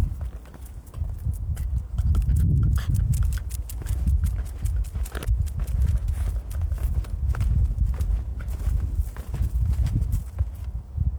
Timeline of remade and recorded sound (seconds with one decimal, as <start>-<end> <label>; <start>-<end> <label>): 0.0-2.1 remade; 2.1-11.2 recorded